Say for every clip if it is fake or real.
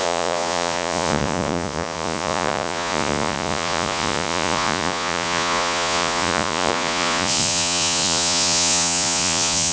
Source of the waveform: fake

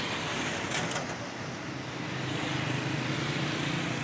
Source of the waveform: real